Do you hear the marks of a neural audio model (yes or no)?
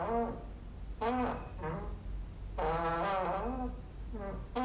no